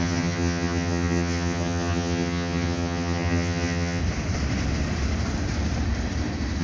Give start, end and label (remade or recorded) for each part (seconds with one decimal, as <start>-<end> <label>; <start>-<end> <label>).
0.0-4.0 remade; 4.0-6.6 recorded